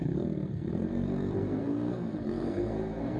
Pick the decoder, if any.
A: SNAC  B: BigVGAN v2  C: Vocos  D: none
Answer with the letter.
A